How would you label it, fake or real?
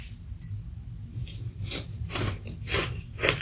fake